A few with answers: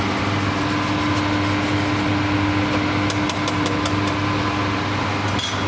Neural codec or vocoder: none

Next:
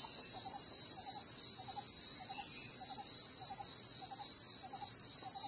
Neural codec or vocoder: none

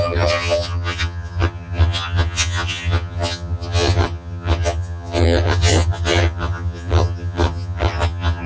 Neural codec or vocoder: vocoder, HiFi-GAN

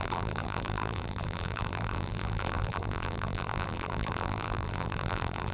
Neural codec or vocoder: vocoder, BigVGAN v2